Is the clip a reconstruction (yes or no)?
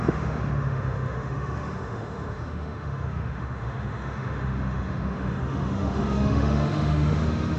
yes